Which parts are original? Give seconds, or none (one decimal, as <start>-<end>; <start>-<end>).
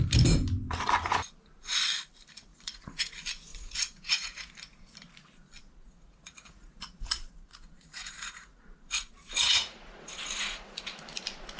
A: 0.0-2.5; 3.1-3.5; 4.5-5.6; 10.8-11.6